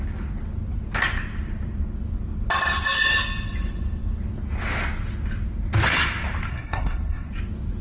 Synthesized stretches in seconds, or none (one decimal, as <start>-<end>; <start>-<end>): 6.5-7.3